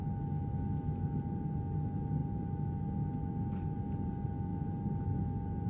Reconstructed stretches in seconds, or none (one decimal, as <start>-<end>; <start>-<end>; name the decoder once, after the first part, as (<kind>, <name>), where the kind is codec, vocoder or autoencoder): none